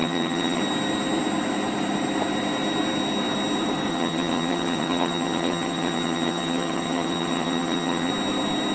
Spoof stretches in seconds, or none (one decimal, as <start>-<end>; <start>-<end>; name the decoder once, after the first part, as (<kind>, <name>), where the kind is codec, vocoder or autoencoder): 0.0-0.6 (vocoder, HiFi-GAN); 3.9-8.1